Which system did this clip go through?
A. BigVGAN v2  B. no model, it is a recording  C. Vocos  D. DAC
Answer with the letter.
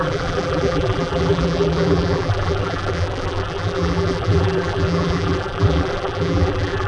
A